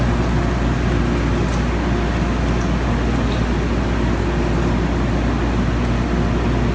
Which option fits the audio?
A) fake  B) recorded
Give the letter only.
B